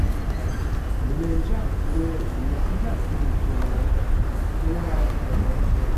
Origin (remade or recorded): recorded